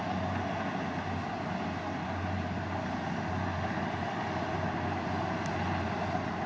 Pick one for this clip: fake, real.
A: real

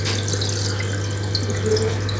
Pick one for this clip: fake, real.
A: real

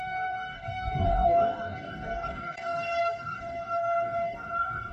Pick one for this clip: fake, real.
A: fake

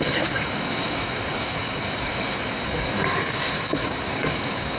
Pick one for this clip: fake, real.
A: fake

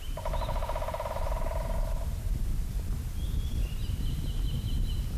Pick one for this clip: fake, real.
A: real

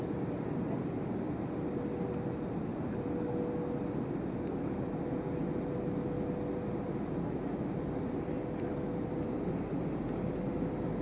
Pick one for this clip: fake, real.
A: real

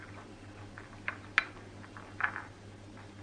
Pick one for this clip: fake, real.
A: real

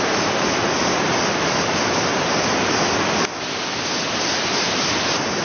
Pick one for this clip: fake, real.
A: real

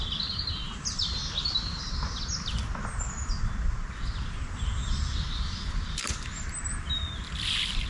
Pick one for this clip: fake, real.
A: real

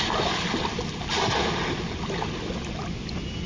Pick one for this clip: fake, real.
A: real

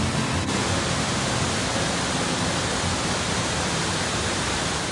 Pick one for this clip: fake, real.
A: real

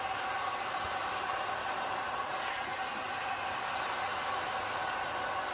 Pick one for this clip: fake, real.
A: real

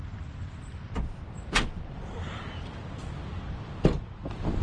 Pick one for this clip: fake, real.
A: real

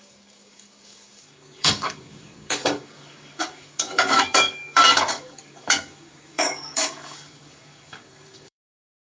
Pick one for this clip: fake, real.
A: fake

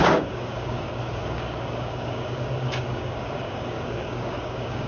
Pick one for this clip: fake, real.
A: fake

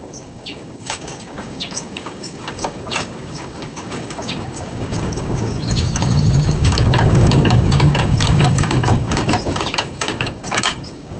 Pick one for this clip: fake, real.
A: fake